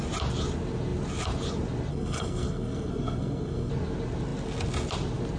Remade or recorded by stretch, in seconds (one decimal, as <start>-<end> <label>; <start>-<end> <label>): 0.0-1.9 recorded; 1.9-3.7 remade; 3.7-5.4 recorded